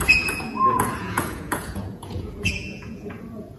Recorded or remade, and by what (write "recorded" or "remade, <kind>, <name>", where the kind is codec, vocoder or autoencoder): remade, vocoder, Vocos